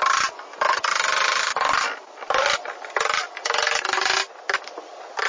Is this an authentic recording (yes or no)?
yes